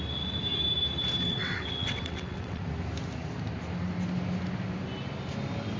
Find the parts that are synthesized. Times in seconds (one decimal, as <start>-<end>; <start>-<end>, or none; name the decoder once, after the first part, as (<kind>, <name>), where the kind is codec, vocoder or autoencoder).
1.3-2.6 (vocoder, WaveNeXt)